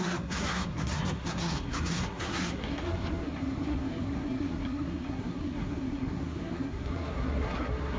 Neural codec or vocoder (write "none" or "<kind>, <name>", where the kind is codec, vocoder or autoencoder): codec, SNAC